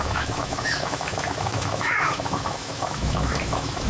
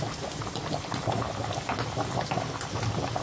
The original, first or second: second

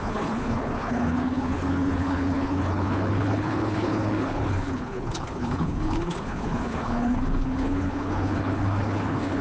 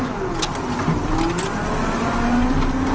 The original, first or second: second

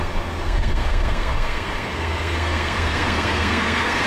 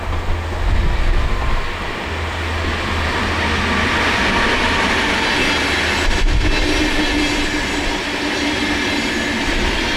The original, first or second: second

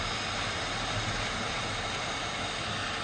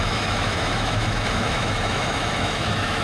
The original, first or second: first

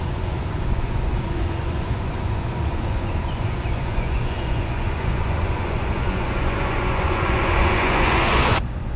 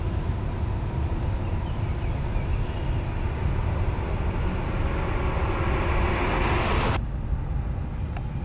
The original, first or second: second